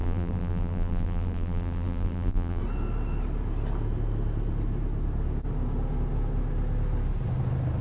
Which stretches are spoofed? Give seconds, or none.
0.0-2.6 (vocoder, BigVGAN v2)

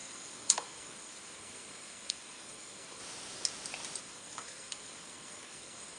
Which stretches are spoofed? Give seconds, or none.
0.0-3.0 (codec, SNAC); 4.0-6.0

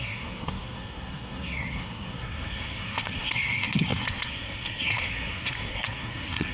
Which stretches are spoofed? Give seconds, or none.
0.0-6.5 (codec, SNAC)

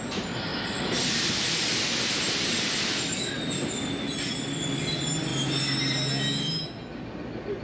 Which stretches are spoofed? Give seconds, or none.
none

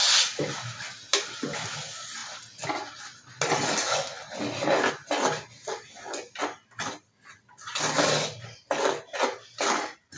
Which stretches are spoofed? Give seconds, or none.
none

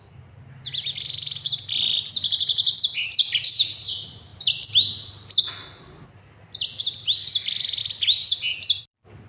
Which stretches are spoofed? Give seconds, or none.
none

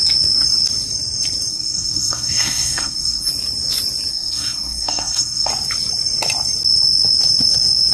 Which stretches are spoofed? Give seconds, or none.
1.5-3.3 (codec, SNAC); 4.1-5.5

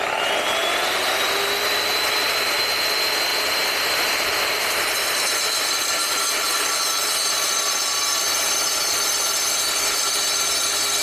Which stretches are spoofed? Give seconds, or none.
0.6-1.1 (vocoder, BigVGAN v2); 3.3-8.5